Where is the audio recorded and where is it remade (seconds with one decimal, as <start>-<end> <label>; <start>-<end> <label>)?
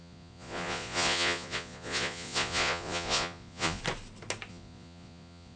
0.0-3.8 remade; 3.8-4.5 recorded; 4.5-5.6 remade